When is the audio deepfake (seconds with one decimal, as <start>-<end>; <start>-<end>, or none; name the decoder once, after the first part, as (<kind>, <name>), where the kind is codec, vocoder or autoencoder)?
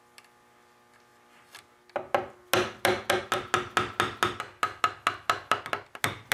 none